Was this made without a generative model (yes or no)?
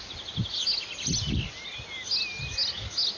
yes